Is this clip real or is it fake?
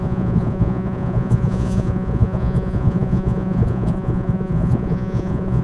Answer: fake